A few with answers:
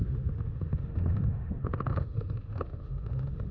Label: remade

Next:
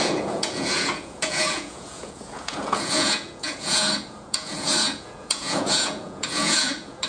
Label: remade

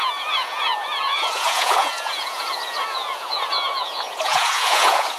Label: remade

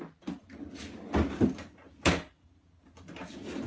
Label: recorded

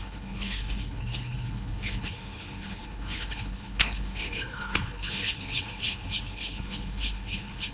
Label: remade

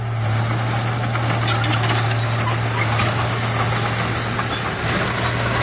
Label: recorded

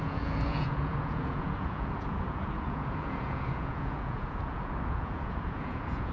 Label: remade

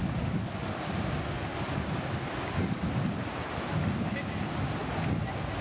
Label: recorded